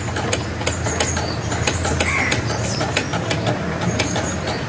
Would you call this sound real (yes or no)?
yes